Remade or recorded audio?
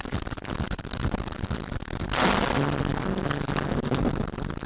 recorded